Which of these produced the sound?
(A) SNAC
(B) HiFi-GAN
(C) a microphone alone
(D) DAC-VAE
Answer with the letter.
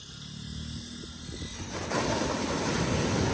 C